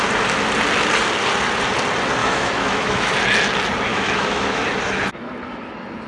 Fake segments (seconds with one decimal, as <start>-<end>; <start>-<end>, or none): 2.2-3.1; 3.9-4.6